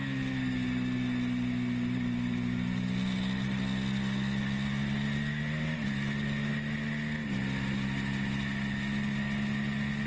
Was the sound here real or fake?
real